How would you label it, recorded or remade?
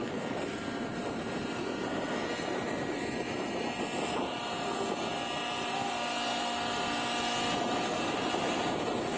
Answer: recorded